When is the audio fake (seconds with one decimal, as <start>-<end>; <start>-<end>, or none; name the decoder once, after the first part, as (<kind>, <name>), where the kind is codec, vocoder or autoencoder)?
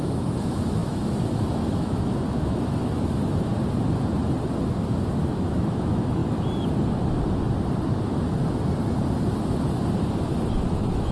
0.0-3.5 (autoencoder, DAC-VAE); 5.2-6.2; 10.4-11.1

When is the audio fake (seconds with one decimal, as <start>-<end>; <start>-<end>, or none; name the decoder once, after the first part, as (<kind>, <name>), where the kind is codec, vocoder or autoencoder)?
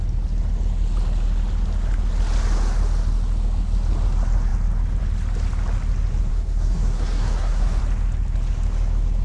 6.3-7.8 (codec, SNAC)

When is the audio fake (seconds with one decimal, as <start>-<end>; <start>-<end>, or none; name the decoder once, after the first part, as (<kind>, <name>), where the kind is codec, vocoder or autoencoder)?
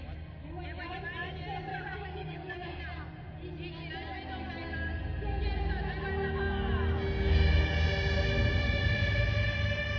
1.7-2.8 (codec, DAC)